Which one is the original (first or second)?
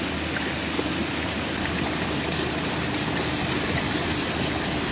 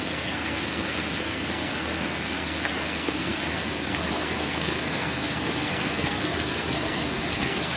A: first